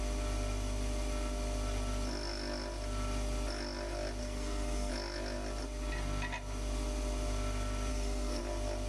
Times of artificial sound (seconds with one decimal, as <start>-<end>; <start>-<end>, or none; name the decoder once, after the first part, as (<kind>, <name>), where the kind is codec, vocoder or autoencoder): 4.2-4.9 (codec, SNAC); 7.9-8.4